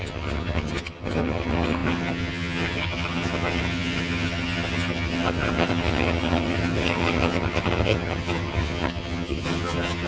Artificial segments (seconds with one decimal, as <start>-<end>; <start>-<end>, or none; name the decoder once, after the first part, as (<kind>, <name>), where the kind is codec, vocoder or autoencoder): 0.0-10.1 (vocoder, HiFi-GAN)